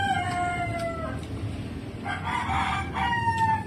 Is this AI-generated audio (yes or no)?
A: no